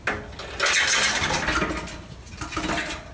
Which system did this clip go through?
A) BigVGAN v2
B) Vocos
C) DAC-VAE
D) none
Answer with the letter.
D